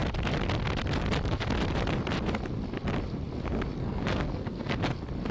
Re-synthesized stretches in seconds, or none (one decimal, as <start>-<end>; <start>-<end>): 3.8-4.8